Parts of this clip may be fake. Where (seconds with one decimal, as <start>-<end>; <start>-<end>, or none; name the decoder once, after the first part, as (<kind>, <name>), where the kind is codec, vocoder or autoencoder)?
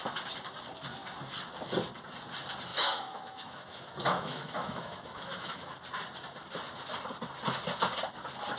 2.7-5.7 (autoencoder, DAC-VAE)